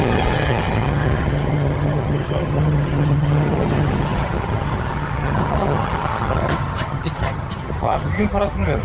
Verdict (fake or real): fake